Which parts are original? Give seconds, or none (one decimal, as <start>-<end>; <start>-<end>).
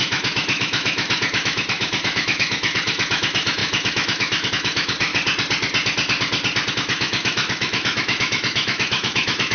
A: 5.1-6.7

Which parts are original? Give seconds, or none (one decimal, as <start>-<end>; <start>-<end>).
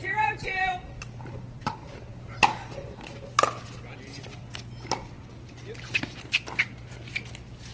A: 1.7-7.7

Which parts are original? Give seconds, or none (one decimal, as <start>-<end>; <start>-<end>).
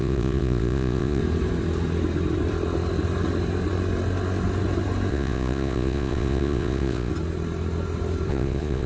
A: 1.2-5.1; 7.1-8.3